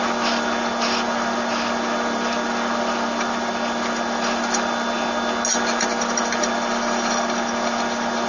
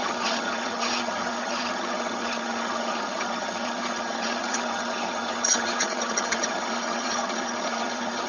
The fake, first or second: second